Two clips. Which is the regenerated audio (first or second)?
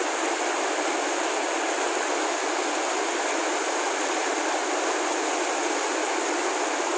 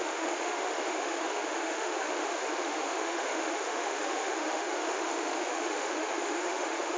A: second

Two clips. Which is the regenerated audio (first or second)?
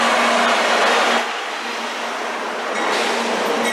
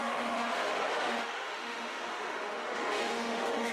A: second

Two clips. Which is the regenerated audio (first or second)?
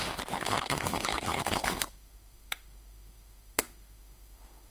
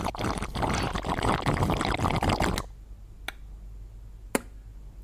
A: first